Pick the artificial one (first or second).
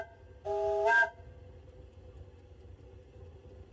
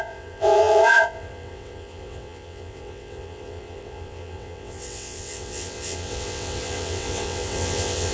second